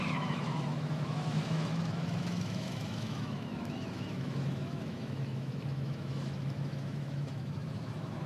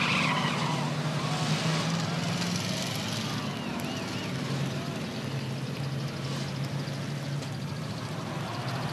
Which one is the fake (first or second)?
first